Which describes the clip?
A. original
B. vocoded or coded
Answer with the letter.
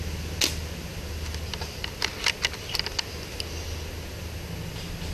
A